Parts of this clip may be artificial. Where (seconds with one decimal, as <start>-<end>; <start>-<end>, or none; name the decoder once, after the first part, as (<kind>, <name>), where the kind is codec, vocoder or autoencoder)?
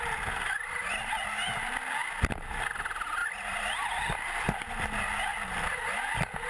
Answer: none